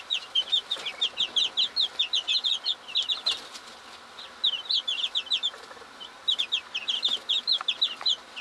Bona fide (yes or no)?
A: yes